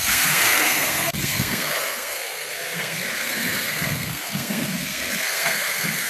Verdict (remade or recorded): remade